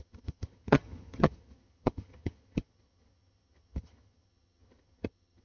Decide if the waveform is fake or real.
fake